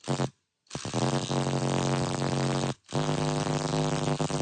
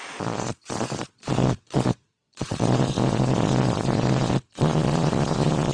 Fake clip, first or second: second